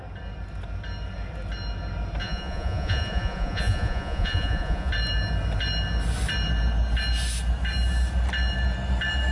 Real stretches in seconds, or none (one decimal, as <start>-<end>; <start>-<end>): 0.0-2.2; 4.9-9.3